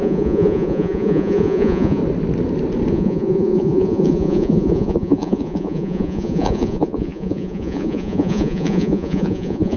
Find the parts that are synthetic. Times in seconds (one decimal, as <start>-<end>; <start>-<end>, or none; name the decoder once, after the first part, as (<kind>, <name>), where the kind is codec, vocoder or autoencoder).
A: 0.0-2.0 (vocoder, Vocos); 2.9-9.8